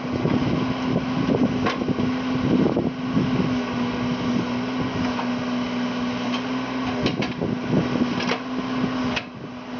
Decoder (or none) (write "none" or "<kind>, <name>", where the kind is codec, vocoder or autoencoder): none